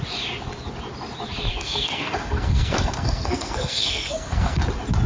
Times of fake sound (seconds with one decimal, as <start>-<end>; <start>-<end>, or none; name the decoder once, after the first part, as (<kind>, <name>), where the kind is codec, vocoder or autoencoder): 1.5-4.6 (codec, SNAC)